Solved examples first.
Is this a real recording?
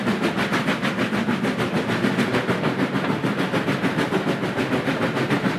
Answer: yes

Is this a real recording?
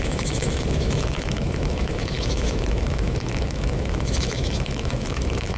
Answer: no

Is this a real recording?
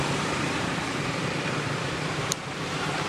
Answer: no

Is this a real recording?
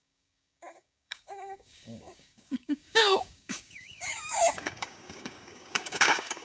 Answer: no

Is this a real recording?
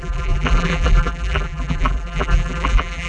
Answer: no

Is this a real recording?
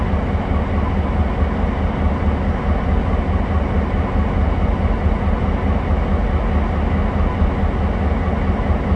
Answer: yes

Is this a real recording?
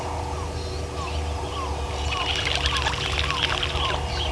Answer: yes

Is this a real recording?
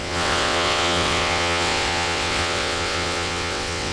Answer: no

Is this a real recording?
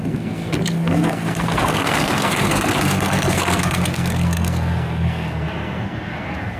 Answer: no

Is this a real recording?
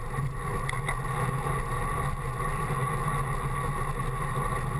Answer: yes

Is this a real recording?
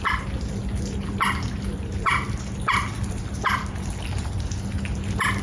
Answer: yes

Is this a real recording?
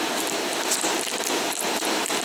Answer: yes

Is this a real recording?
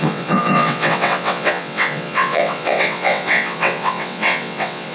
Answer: no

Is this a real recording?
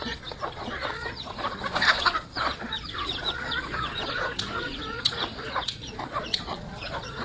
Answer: no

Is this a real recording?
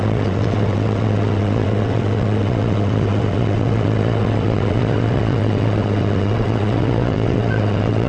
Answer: no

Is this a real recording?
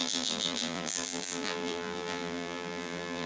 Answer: no